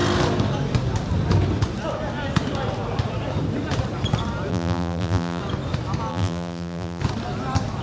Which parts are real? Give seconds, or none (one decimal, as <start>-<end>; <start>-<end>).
0.0-4.5; 5.4-6.1; 7.0-7.8